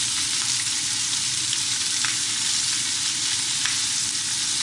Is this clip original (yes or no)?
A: yes